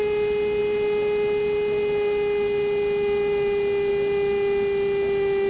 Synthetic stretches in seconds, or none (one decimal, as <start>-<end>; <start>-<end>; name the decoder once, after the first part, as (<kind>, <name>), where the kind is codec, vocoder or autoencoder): none